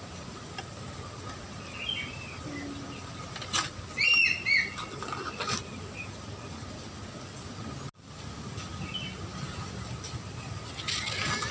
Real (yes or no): yes